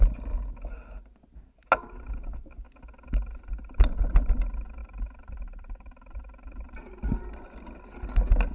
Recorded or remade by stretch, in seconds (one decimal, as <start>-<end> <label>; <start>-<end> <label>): 0.0-4.8 recorded; 4.8-6.9 remade; 6.9-8.5 recorded